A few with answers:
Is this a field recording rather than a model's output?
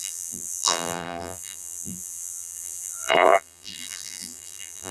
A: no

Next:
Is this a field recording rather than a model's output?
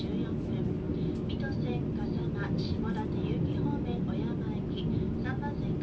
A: yes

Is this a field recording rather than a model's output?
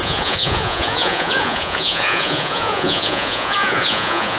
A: no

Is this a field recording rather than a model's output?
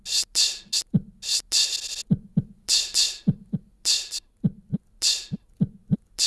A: yes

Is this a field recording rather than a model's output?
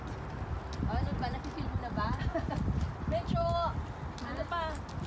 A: yes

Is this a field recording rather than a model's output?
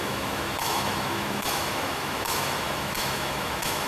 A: no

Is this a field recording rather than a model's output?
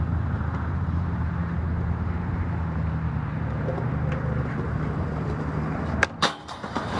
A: no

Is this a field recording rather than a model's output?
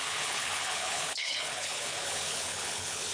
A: no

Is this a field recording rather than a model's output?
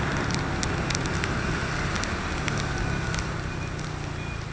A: yes